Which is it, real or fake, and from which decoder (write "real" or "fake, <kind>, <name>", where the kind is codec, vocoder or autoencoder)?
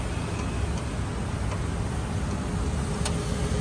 real